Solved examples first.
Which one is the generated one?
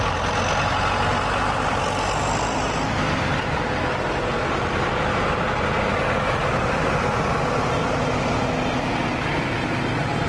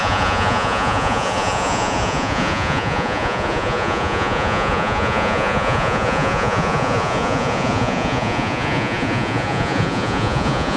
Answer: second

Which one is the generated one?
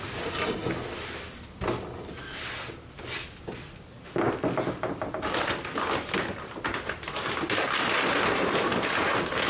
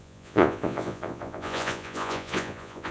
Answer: second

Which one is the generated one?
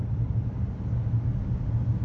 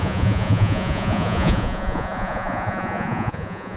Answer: second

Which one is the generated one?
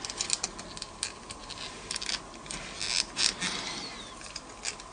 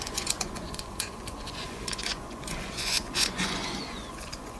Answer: second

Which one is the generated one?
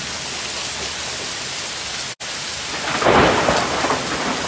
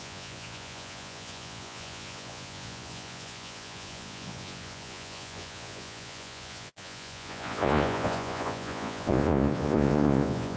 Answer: second